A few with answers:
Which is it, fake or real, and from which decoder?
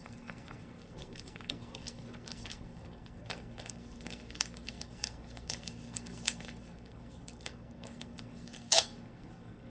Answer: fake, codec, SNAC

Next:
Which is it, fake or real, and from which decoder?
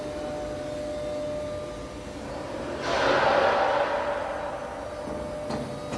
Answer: real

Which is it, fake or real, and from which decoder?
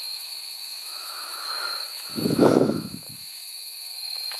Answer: fake, autoencoder, DAC-VAE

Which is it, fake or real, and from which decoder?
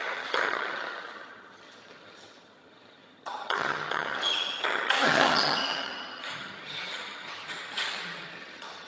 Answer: fake, vocoder, HiFi-GAN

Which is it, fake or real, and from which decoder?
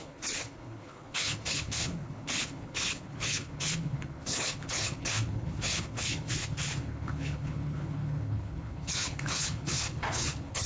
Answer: fake, codec, HILCodec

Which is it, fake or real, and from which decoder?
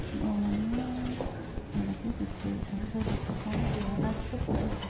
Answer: real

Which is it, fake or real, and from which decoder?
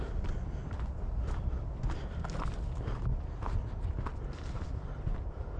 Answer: real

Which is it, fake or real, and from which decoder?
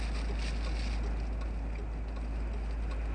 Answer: real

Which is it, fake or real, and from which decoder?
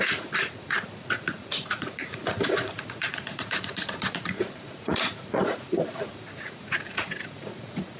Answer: fake, vocoder, Vocos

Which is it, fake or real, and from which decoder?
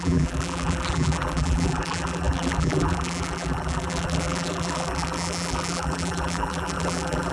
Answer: fake, vocoder, BigVGAN v2